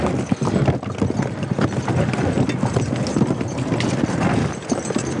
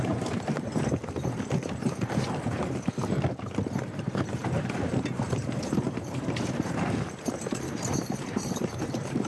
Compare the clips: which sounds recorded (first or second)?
first